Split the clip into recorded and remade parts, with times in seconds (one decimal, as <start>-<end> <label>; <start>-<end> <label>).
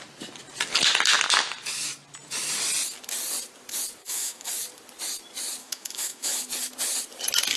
0.0-4.0 recorded; 4.0-4.5 remade; 4.5-5.6 recorded; 5.6-6.5 remade; 6.5-7.6 recorded